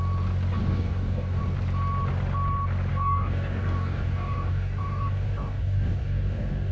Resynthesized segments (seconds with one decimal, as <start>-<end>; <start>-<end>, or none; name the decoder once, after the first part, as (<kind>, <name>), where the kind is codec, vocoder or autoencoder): 0.6-1.4 (codec, DAC); 2.9-6.7